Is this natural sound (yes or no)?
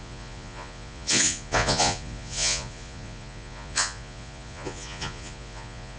no